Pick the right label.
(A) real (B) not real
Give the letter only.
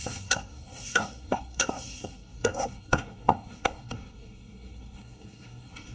B